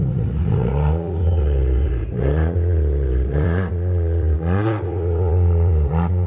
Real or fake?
fake